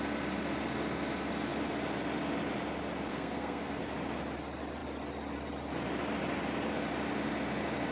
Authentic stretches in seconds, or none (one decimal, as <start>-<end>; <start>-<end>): 0.0-3.1; 3.8-7.9